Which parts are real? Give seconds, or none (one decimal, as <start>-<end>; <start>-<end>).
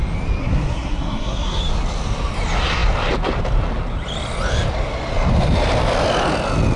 0.0-0.4; 1.6-6.8